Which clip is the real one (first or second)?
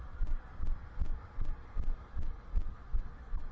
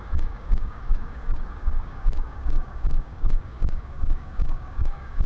first